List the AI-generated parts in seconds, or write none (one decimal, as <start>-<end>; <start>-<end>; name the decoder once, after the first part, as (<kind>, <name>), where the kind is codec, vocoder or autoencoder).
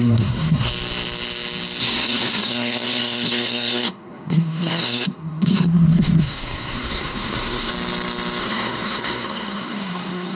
0.0-0.7 (codec, SNAC); 1.8-7.7; 8.4-10.3